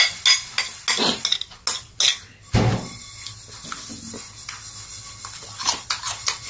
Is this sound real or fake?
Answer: real